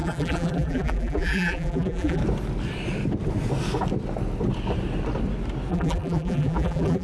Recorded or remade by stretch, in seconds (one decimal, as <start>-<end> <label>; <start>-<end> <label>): 0.0-2.2 remade; 2.2-5.7 recorded; 5.7-7.0 remade